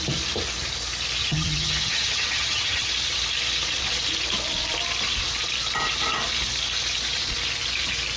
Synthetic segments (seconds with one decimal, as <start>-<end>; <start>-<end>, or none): 1.2-2.9

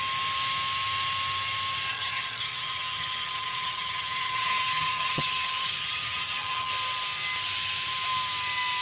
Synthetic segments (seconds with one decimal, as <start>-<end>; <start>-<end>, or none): 1.9-6.7